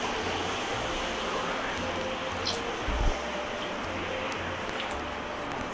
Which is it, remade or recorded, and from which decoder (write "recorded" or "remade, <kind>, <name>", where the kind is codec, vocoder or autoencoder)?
recorded